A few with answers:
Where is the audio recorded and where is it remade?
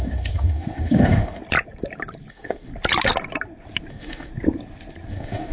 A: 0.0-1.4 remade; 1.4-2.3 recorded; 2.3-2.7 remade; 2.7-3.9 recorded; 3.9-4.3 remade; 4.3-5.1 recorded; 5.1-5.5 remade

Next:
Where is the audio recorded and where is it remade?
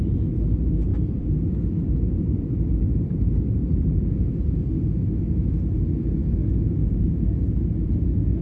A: 0.0-0.9 recorded; 0.9-4.5 remade; 4.5-6.2 recorded; 6.2-7.2 remade; 7.2-8.4 recorded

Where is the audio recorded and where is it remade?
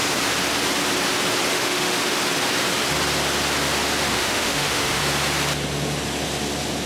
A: 0.0-1.5 recorded; 1.5-2.2 remade; 2.2-4.1 recorded; 4.1-5.0 remade; 5.0-6.9 recorded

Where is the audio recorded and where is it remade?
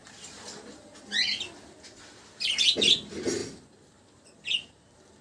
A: 0.0-5.2 recorded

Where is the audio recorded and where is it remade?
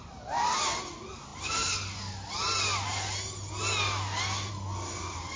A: 0.0-5.4 recorded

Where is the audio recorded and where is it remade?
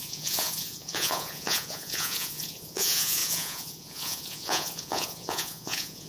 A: 0.0-6.1 remade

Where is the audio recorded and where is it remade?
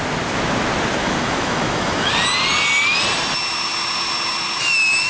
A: 0.0-1.0 recorded; 1.0-2.1 remade; 2.1-5.1 recorded